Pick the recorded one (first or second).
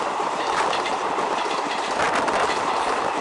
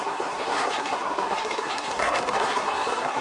first